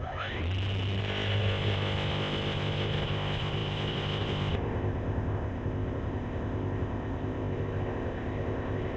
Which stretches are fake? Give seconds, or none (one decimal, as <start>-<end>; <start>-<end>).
0.0-0.4; 1.0-9.0